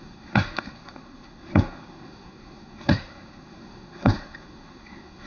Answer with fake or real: fake